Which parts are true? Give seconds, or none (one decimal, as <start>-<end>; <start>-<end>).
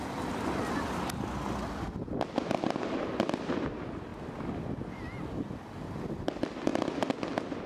0.0-7.7